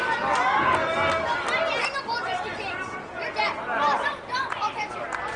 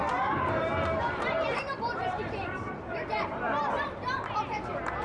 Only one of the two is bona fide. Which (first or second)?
first